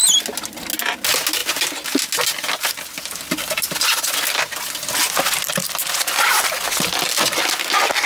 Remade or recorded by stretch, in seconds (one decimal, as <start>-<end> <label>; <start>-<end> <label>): 0.0-8.1 recorded

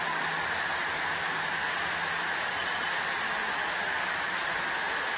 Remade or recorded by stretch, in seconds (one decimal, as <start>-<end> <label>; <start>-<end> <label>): 0.0-5.2 recorded